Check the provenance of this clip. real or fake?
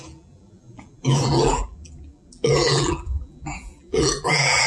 fake